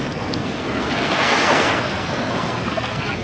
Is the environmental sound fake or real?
fake